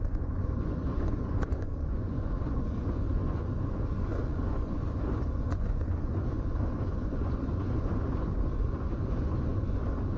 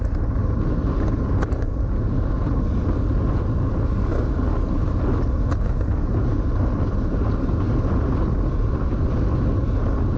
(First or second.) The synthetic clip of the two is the first